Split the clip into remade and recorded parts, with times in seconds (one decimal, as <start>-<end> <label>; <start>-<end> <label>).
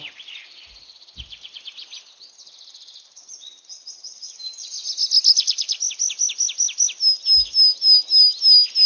0.0-8.9 recorded